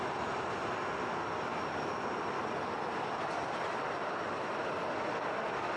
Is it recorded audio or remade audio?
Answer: recorded